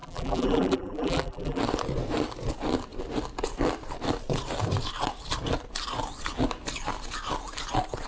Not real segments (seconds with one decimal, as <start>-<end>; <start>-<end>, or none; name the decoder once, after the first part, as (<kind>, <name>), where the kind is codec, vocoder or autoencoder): 0.0-1.6 (vocoder, BigVGAN v2)